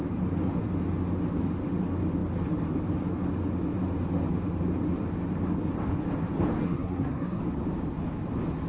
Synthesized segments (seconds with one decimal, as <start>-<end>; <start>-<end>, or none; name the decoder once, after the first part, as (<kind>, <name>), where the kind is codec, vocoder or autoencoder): 6.6-7.4 (codec, SNAC)